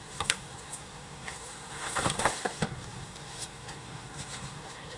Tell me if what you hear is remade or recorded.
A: remade